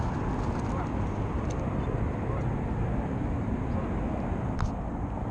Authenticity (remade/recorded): recorded